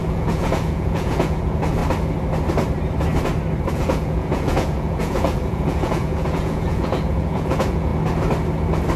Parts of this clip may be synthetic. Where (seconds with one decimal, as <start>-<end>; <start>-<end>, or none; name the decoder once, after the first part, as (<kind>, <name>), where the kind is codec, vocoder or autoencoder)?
0.0-1.8 (vocoder, Vocos); 3.7-7.9